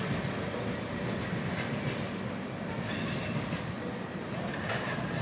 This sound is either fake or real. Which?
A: real